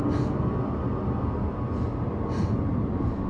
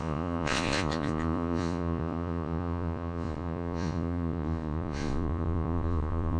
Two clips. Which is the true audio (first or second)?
first